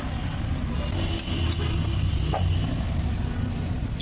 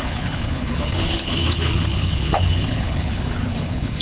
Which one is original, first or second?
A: first